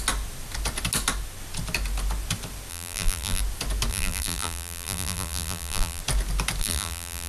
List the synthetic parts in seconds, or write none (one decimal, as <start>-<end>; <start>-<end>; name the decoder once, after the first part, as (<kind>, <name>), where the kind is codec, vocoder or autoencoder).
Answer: 2.7-3.4 (vocoder, BigVGAN v2); 3.9-6.0; 6.6-7.3